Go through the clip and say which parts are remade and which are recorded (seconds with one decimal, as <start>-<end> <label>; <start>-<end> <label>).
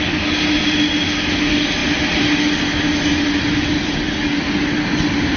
0.0-5.4 recorded